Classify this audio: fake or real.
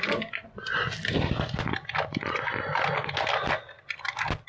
real